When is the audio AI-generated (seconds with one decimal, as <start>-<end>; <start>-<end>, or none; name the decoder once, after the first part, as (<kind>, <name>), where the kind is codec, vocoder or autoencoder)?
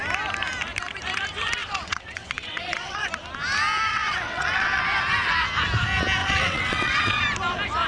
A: 1.6-3.1 (vocoder, WaveNeXt); 3.9-4.8; 6.2-7.2